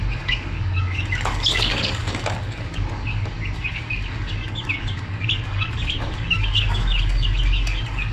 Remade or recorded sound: remade